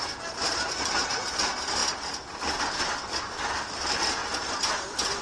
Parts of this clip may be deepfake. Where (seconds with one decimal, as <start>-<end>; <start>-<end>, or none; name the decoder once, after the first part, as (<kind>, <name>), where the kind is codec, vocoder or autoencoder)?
0.4-1.4 (vocoder, BigVGAN v2); 4.2-4.7